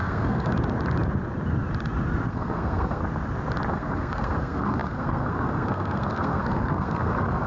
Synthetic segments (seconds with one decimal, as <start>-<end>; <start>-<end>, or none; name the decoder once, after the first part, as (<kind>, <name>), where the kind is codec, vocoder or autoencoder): 0.0-0.5 (codec, SNAC); 2.3-3.0; 3.7-7.5